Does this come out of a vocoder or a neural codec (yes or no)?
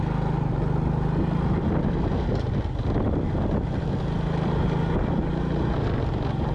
no